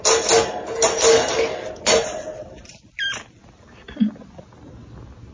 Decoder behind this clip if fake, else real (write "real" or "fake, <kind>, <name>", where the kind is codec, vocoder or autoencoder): real